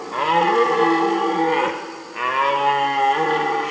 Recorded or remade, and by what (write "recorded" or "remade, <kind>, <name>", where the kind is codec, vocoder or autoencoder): recorded